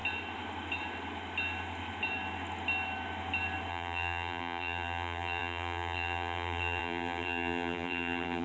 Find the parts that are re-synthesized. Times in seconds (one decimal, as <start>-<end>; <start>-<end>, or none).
3.7-8.4